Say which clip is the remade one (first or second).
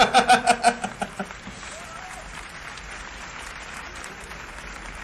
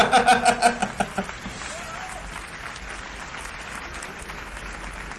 first